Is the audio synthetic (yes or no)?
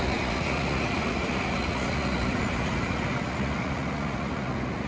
yes